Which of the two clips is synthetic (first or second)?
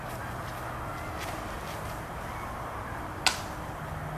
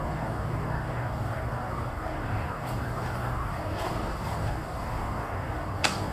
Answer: second